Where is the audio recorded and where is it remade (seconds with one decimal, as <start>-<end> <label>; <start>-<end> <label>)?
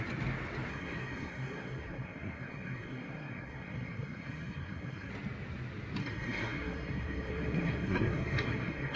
0.0-0.7 recorded; 0.7-5.1 remade; 5.1-6.0 recorded; 6.0-9.0 remade